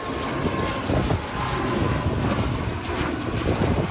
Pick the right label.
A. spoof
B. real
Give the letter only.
B